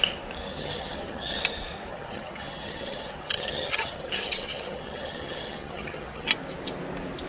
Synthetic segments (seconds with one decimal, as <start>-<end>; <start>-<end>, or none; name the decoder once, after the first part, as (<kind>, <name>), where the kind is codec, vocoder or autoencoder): 0.5-1.4 (vocoder, HiFi-GAN); 1.9-6.3